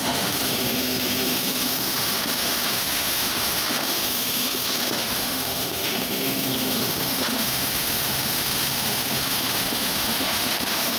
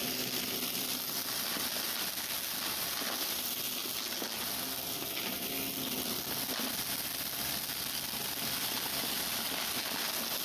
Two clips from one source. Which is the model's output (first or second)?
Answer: first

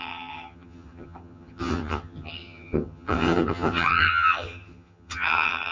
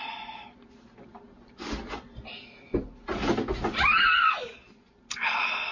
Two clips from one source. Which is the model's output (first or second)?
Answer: first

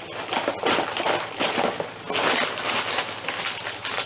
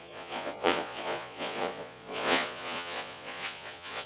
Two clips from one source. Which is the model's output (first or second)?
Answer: second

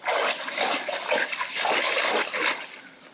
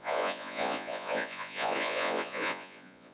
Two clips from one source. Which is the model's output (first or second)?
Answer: second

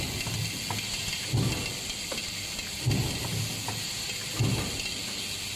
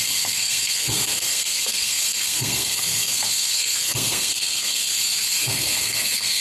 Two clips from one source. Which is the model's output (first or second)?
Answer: second